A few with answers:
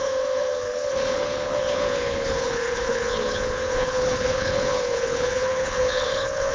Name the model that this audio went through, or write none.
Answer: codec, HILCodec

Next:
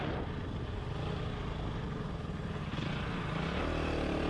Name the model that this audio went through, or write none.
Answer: none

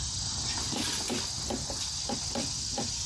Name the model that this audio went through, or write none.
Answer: none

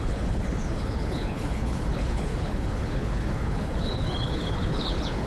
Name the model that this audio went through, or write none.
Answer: codec, HILCodec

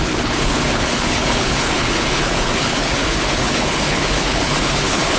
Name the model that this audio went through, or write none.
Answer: codec, HILCodec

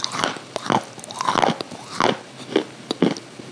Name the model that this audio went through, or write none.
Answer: none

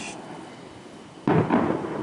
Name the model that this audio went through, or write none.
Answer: none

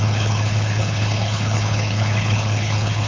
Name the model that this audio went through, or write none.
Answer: codec, HILCodec